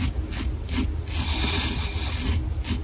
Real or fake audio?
real